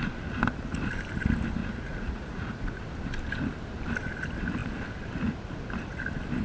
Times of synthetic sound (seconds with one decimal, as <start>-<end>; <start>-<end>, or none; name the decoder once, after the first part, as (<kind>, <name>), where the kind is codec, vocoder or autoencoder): 1.6-2.8 (vocoder, Vocos)

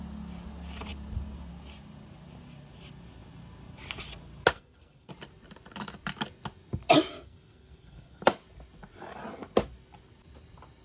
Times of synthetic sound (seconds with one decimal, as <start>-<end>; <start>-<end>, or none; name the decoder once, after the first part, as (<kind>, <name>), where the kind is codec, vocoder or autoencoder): 4.5-5.1 (codec, SNAC); 7.1-8.2

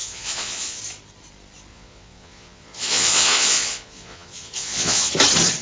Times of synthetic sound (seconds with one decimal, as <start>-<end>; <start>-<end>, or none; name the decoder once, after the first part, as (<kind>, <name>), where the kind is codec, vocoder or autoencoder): 0.0-0.8 (vocoder, Vocos); 1.7-5.1

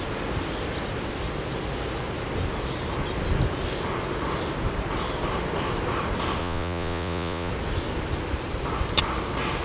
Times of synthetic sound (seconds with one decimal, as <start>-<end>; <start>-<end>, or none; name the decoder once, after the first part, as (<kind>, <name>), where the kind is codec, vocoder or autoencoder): 6.4-7.5 (vocoder, Vocos)

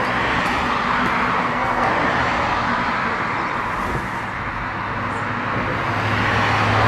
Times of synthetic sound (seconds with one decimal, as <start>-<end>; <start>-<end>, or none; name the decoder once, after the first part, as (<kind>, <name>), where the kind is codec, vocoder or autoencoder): 1.4-1.9 (codec, SNAC)

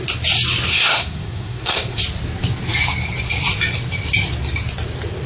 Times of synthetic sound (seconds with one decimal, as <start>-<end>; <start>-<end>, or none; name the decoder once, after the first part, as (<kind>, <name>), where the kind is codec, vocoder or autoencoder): 0.7-2.0 (codec, SNAC)

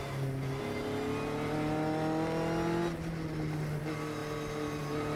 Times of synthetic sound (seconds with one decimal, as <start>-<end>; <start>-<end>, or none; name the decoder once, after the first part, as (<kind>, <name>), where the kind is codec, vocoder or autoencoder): none